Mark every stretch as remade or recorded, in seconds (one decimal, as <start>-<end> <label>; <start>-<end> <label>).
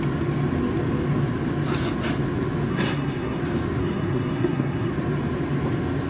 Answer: 0.0-2.7 recorded; 2.7-3.4 remade; 3.4-3.8 recorded; 3.8-4.9 remade; 4.9-6.1 recorded